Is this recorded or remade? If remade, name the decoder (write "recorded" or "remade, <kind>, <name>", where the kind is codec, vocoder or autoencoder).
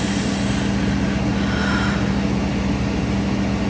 recorded